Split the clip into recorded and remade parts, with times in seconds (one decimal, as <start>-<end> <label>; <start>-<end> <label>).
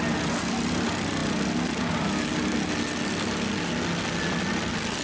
0.0-5.0 recorded